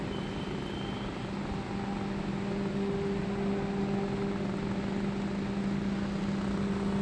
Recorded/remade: recorded